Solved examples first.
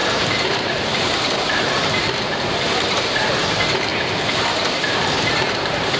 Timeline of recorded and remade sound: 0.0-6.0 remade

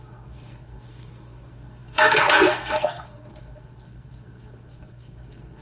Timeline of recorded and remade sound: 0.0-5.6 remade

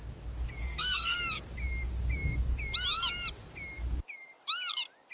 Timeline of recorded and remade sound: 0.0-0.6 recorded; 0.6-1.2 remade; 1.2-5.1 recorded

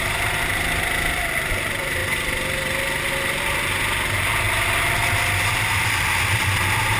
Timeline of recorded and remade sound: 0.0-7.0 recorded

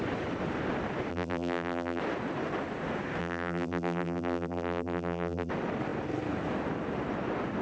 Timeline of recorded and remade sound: 0.0-1.1 recorded; 1.1-2.0 remade; 2.0-3.2 recorded; 3.2-5.5 remade; 5.5-7.6 recorded

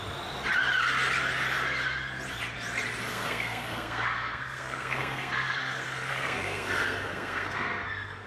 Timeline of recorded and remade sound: 0.0-3.1 recorded; 3.1-8.3 remade